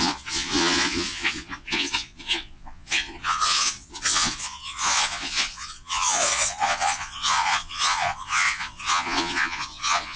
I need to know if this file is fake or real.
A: fake